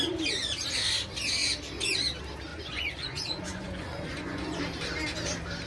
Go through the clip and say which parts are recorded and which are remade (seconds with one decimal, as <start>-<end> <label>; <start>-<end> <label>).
0.0-2.5 recorded; 2.5-4.6 remade; 4.6-5.7 recorded